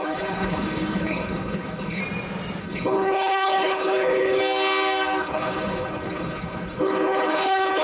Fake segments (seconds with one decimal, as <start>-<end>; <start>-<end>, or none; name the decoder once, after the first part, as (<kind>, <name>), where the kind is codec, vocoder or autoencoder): 0.0-2.0 (codec, HILCodec); 2.6-4.4; 5.2-7.8